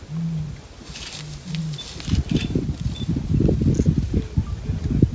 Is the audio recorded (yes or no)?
yes